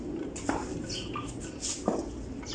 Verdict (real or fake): real